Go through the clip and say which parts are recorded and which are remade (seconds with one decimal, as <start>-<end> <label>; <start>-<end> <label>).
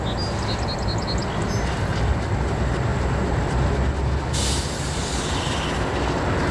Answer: 0.0-6.5 recorded